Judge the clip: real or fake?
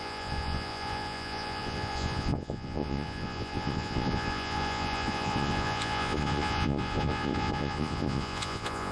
fake